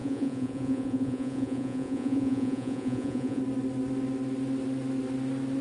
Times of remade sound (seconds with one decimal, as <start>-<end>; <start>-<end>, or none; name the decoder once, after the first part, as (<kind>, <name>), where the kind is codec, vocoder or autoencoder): 0.0-3.4 (vocoder, Vocos)